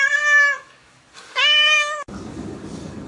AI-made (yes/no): yes